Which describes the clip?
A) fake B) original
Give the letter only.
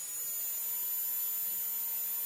B